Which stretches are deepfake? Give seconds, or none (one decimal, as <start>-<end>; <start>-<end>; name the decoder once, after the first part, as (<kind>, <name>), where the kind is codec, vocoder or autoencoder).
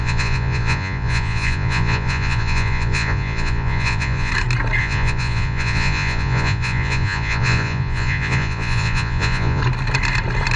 0.0-4.3 (vocoder, Vocos); 4.8-9.6